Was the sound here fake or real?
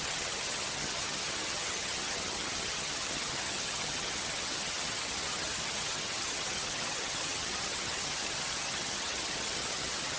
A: fake